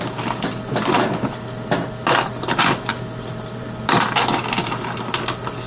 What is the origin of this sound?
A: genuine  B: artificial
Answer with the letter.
A